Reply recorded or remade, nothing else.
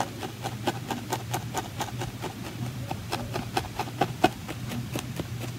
recorded